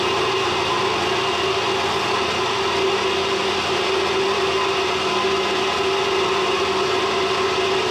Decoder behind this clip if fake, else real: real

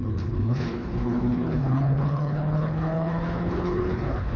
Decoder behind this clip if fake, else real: fake, codec, HILCodec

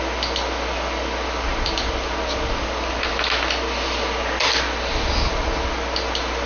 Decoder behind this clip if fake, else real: real